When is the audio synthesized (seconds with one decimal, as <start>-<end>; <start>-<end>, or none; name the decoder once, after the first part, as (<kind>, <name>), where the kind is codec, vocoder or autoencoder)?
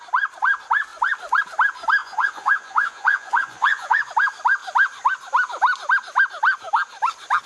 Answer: 2.0-4.1 (vocoder, Vocos)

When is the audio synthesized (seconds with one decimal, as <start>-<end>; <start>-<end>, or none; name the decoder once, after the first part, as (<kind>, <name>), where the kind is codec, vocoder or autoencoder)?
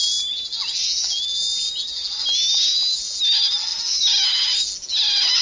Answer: none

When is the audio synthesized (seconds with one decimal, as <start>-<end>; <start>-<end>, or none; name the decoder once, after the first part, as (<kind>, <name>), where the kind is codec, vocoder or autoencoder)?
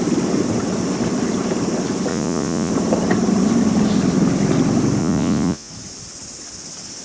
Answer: 2.1-2.7 (vocoder, Vocos); 5.0-5.7